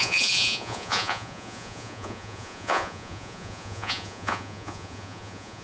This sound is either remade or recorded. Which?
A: remade